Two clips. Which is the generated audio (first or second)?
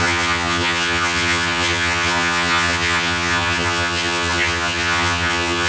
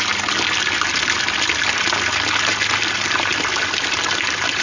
first